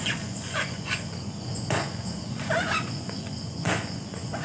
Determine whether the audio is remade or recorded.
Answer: remade